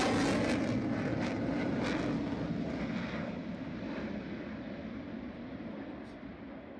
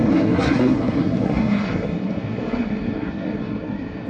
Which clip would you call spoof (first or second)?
second